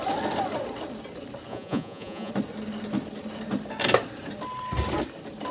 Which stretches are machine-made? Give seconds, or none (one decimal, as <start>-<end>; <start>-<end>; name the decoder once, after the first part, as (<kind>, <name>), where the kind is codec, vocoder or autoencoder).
1.5-2.3 (vocoder, Vocos)